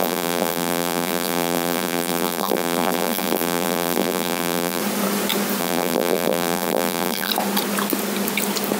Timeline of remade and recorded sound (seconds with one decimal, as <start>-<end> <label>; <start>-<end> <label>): 0.0-4.8 remade; 4.8-5.6 recorded; 5.6-7.3 remade; 7.3-8.8 recorded